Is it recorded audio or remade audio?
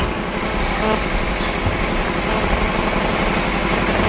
recorded